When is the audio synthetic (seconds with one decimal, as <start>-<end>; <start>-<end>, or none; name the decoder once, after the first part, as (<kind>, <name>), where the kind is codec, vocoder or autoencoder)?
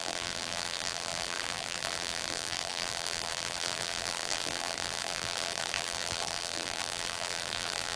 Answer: 0.0-8.0 (vocoder, BigVGAN v2)